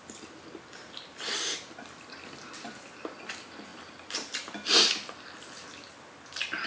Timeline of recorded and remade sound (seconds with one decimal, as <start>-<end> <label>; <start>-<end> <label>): 0.0-6.7 recorded